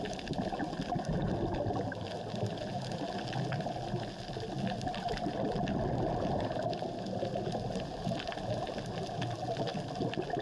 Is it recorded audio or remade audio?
recorded